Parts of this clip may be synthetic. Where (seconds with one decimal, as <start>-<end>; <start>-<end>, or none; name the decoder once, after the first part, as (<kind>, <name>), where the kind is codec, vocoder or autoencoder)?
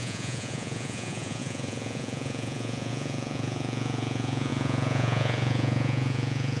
0.0-6.6 (vocoder, Vocos)